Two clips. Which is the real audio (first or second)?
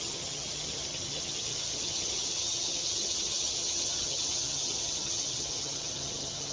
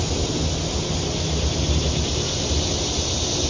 second